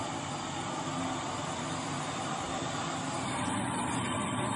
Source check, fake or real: fake